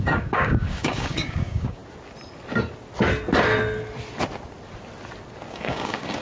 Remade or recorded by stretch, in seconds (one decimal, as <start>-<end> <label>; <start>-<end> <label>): 0.0-1.8 remade; 1.8-5.5 recorded; 5.5-6.2 remade